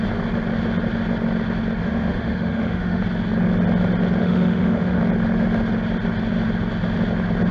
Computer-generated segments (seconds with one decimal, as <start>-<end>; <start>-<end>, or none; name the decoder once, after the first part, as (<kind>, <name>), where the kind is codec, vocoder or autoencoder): 1.8-3.0 (autoencoder, DAC-VAE); 4.2-5.0